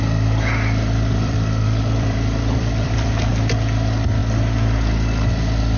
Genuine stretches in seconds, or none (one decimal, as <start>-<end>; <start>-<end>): 0.0-1.1; 3.3-5.8